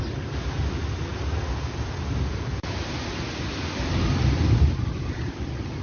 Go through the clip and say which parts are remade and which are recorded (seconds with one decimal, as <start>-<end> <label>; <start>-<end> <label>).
0.0-5.8 recorded